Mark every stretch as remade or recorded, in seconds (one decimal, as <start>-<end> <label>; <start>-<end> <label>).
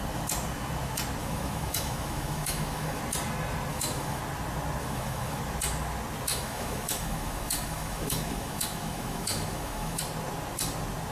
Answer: 0.0-1.2 recorded; 1.2-3.0 remade; 3.0-3.7 recorded; 3.7-4.2 remade; 4.2-4.8 recorded; 4.8-5.4 remade; 5.4-6.3 recorded; 6.3-10.0 remade; 10.0-11.1 recorded